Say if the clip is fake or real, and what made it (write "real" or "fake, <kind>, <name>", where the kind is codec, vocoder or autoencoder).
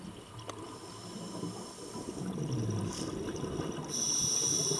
real